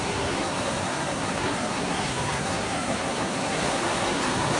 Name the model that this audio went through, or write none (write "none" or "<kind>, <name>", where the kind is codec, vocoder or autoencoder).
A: codec, SNAC